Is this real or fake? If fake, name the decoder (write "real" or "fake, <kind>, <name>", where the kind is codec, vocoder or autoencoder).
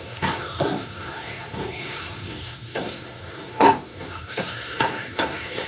fake, codec, SNAC